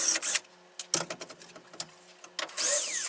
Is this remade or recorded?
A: recorded